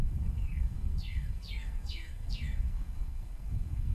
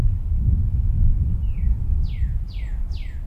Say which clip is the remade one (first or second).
first